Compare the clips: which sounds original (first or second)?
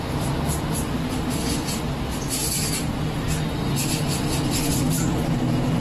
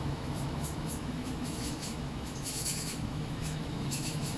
first